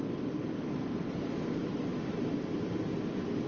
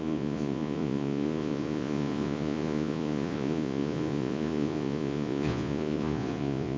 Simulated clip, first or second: second